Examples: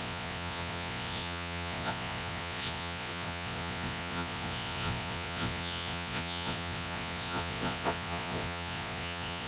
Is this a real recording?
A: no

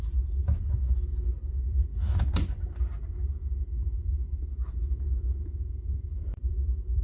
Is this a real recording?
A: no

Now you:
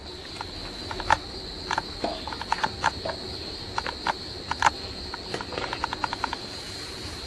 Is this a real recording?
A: yes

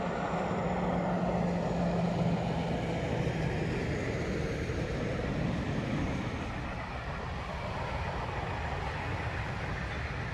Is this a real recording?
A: yes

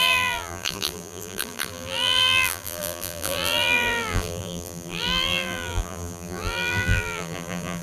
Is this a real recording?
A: no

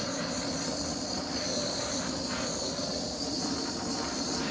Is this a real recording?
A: yes